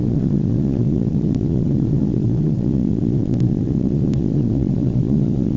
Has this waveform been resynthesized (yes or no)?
yes